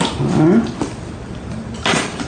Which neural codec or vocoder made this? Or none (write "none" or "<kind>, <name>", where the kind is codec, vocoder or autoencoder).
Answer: none